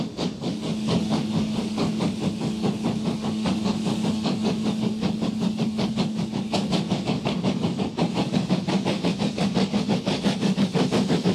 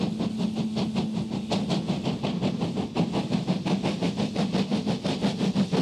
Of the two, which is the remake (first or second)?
first